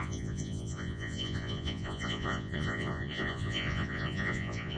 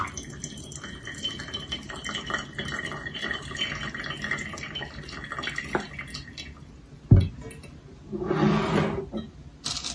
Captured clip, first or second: second